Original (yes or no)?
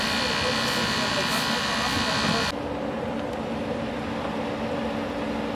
yes